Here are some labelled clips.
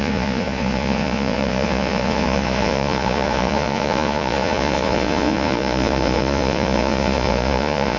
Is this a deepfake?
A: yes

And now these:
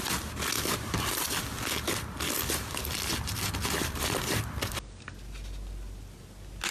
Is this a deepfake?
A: no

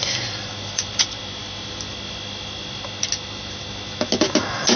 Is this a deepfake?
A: no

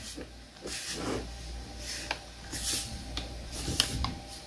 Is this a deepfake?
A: no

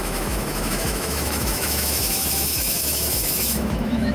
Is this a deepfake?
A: yes